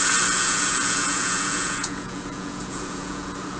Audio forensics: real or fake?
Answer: fake